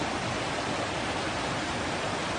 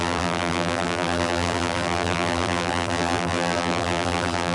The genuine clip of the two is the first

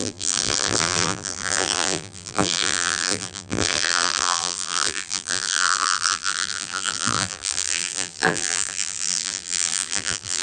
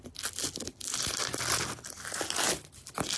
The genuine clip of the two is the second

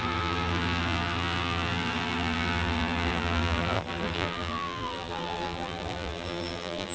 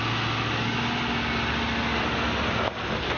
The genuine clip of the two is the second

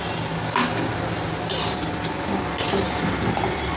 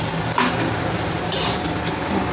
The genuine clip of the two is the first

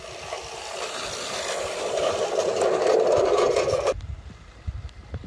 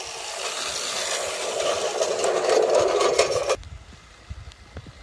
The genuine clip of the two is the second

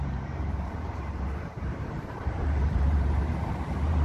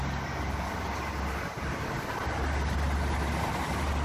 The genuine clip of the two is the second